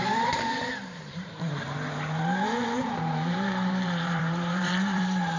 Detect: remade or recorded remade